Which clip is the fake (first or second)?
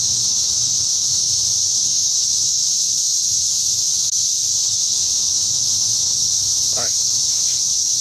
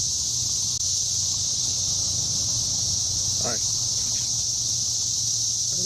first